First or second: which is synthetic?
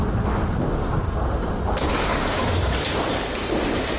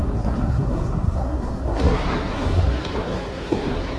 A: second